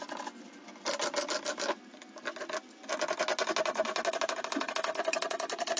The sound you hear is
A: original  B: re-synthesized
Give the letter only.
A